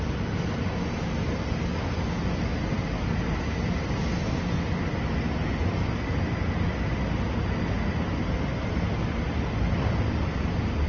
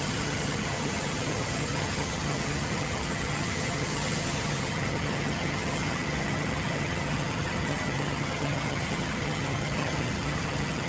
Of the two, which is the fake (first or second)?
second